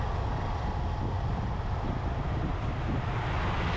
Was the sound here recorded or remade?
recorded